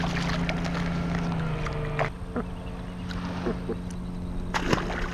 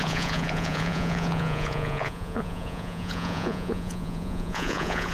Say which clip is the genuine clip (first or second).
first